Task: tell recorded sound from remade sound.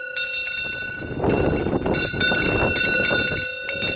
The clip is recorded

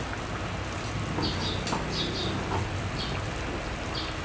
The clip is recorded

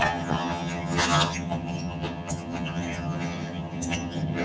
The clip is remade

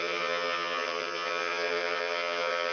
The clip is remade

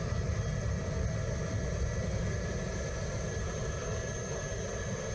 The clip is recorded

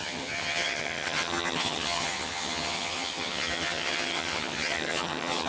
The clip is remade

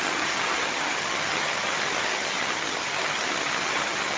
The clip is remade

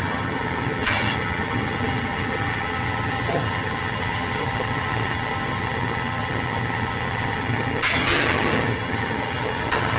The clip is remade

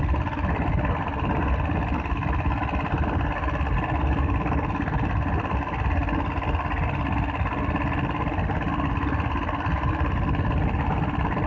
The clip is recorded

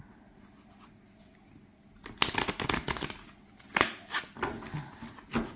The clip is recorded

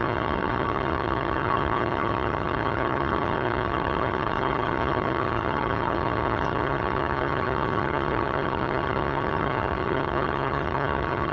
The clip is remade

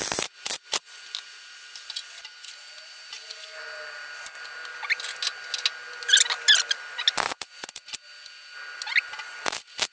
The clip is recorded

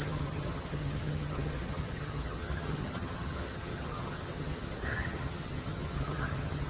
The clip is remade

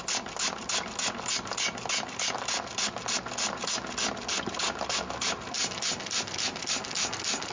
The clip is recorded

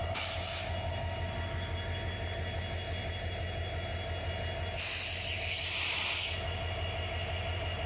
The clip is recorded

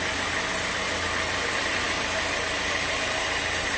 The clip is recorded